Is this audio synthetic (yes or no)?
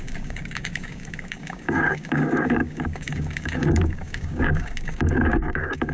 yes